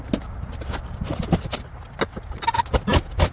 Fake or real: real